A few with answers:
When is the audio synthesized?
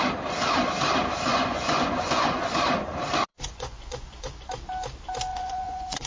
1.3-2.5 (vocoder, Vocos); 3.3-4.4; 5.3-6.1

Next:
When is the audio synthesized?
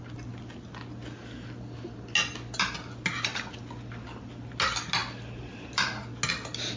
none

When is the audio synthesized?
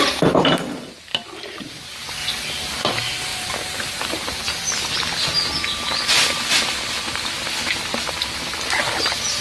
3.3-4.5 (vocoder, BigVGAN v2)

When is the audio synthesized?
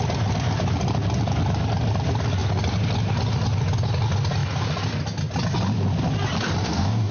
6.6-7.1 (codec, DAC)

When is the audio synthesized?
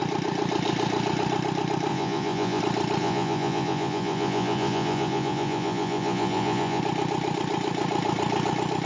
1.9-2.6 (vocoder, Vocos); 3.0-6.8